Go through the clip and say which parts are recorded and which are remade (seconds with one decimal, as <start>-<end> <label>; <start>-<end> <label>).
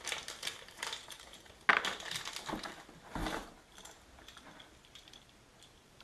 0.0-6.0 recorded